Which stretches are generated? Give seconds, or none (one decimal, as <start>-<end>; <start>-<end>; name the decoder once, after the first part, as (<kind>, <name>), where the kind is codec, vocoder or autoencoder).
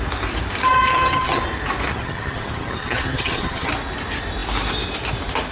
0.9-1.4 (vocoder, HiFi-GAN); 1.9-3.7